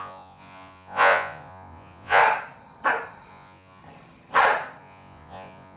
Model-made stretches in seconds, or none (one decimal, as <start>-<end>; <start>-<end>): 0.0-2.2; 3.3-3.8; 4.8-5.8